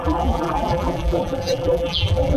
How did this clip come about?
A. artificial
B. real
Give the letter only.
A